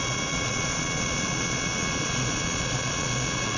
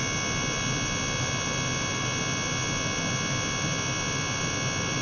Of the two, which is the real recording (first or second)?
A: second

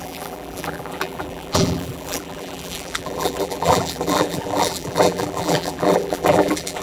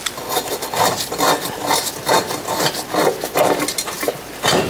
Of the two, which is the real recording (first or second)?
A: second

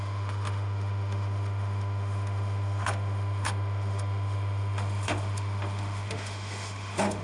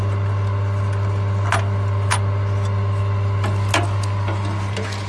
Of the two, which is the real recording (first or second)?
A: second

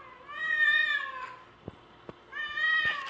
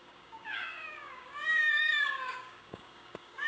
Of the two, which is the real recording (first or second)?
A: first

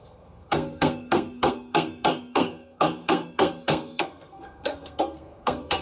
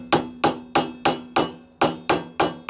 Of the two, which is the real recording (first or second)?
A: second